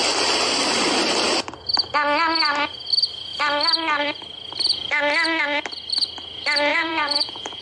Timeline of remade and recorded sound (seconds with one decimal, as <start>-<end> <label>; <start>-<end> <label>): 0.0-6.7 recorded; 6.7-7.6 remade